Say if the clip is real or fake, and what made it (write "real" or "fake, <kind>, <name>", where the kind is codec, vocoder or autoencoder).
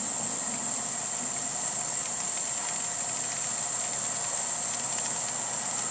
real